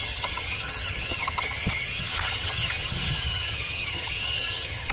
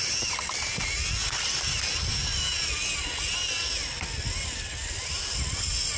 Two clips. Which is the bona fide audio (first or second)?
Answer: second